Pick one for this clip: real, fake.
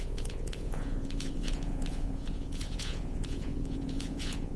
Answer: fake